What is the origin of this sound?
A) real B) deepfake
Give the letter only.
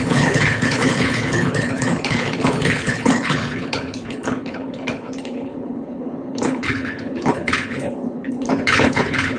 B